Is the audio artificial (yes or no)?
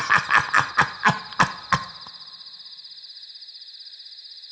no